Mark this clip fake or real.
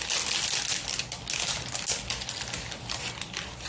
real